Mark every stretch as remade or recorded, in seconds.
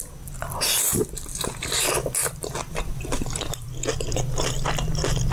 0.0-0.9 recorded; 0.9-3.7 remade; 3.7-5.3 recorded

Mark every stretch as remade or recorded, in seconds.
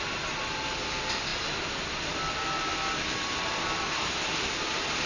0.0-1.3 recorded; 1.3-2.2 remade; 2.2-5.1 recorded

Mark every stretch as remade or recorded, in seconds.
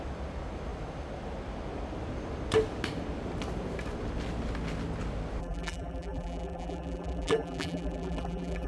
0.0-5.4 recorded; 5.4-8.7 remade